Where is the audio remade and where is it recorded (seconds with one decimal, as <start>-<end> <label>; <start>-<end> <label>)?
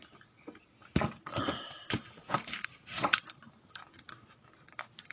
0.0-1.3 recorded; 1.3-3.7 remade; 3.7-5.1 recorded